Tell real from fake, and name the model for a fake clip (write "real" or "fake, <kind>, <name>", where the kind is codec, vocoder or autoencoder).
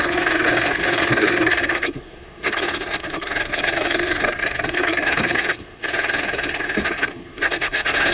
fake, codec, SNAC